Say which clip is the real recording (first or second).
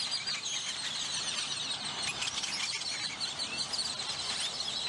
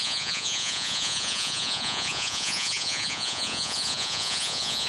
first